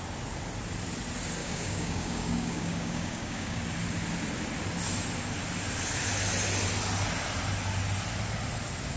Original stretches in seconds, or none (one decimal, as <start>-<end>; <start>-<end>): 0.0-1.4; 3.6-9.0